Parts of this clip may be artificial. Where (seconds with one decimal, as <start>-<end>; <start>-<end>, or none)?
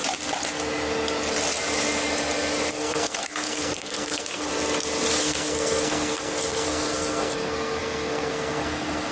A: 2.7-4.5; 5.2-9.1